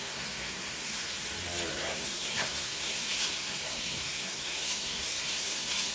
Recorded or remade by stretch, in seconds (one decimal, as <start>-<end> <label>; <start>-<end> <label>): 0.0-1.1 remade; 1.1-1.7 recorded; 1.7-5.9 remade